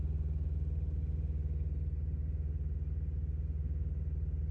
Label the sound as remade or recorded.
recorded